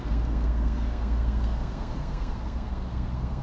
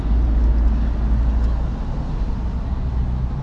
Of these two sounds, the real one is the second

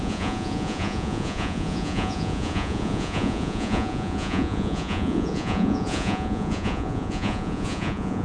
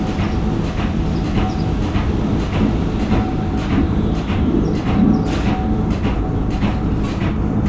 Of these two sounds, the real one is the second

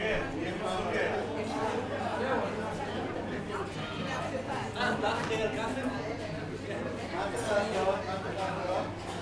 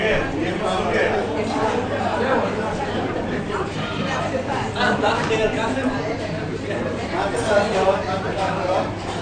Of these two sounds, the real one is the first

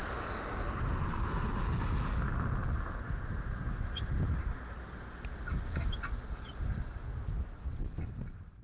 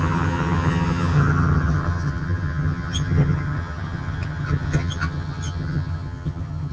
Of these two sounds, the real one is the first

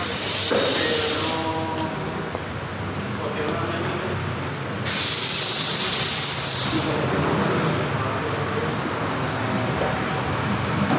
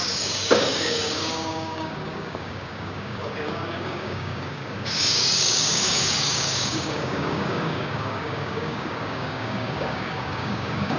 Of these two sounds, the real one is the first